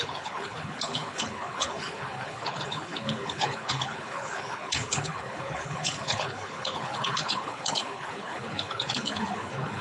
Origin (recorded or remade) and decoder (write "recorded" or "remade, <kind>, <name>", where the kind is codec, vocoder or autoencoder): remade, codec, HILCodec